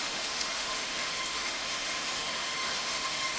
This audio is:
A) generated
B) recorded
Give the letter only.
A